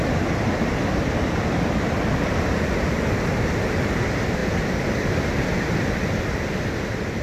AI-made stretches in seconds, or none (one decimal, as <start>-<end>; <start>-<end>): none